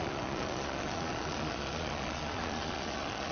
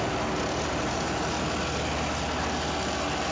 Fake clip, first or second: first